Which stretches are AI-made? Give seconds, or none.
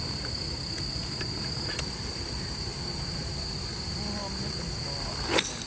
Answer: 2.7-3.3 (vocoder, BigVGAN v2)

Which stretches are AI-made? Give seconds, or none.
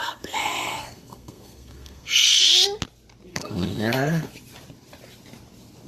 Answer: 0.0-2.4 (codec, SNAC); 3.3-4.3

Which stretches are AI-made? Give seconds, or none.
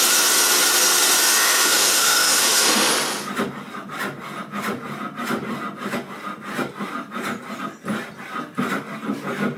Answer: 1.4-2.9 (autoencoder, DAC-VAE)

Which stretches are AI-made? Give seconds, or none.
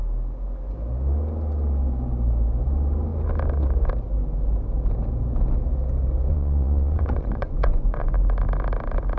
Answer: 6.3-8.1 (vocoder, Vocos)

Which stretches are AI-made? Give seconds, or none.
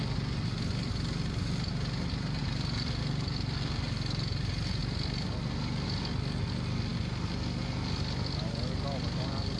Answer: 2.4-3.0 (vocoder, BigVGAN v2); 4.8-6.0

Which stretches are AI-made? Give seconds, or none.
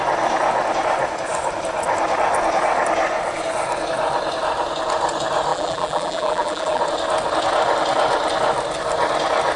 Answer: 5.5-6.8 (vocoder, BigVGAN v2)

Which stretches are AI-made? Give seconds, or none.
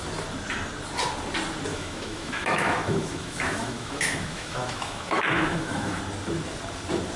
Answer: 1.7-6.0 (autoencoder, DAC-VAE)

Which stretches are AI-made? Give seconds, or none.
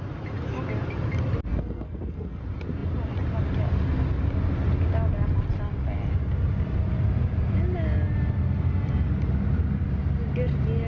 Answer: 1.5-2.4 (codec, SNAC)